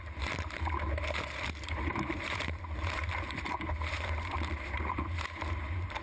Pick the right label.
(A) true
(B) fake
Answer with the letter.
B